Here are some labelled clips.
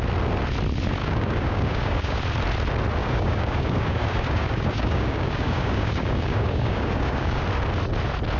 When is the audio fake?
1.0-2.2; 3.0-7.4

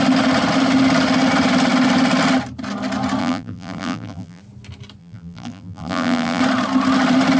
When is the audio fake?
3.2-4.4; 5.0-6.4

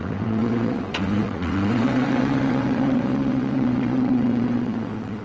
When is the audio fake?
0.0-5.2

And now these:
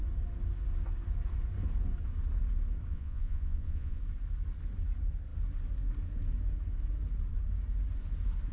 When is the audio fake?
2.9-4.0

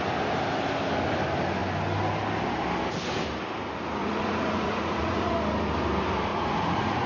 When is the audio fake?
4.0-5.3; 6.3-7.1

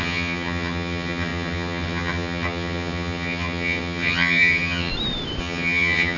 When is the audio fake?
0.0-4.9; 5.4-6.2